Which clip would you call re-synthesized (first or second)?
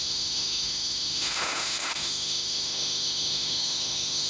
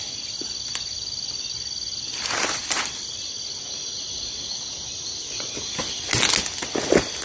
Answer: first